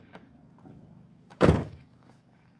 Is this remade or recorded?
remade